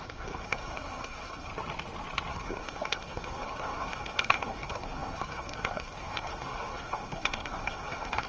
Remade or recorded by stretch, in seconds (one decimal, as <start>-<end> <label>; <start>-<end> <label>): 0.0-1.5 remade; 1.5-2.3 recorded; 2.3-8.3 remade